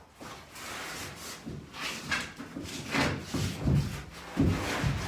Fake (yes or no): no